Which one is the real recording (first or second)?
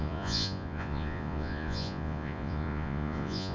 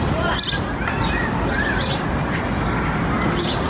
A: second